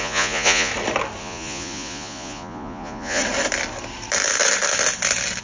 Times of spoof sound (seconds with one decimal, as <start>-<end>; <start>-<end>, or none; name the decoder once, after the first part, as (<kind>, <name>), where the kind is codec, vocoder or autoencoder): 0.0-0.7 (vocoder, Vocos); 1.2-3.2